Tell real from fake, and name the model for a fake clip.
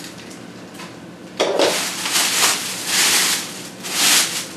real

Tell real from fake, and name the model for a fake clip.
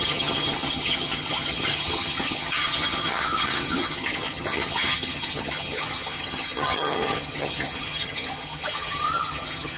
fake, vocoder, HiFi-GAN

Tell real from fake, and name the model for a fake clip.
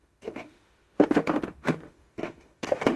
fake, autoencoder, DAC-VAE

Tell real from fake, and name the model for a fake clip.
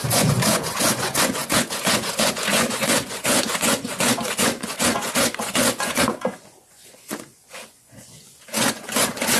fake, vocoder, Vocos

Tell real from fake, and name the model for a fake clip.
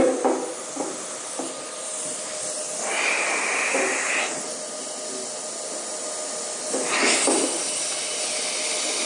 real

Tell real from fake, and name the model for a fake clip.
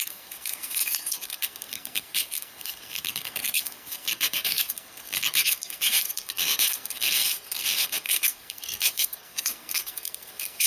fake, codec, SNAC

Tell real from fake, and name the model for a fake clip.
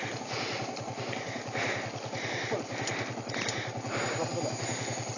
real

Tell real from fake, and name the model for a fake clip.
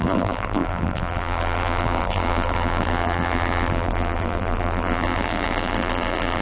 fake, vocoder, BigVGAN v2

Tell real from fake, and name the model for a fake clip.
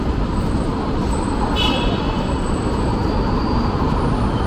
fake, vocoder, BigVGAN v2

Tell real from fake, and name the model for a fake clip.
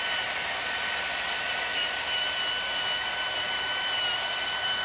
real